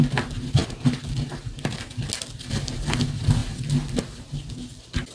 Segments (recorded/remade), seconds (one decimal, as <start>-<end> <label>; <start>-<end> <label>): 0.0-5.1 recorded